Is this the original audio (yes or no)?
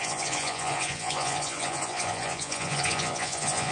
no